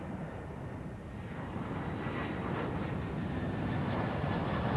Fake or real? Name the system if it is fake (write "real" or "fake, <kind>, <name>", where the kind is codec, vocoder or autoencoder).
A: real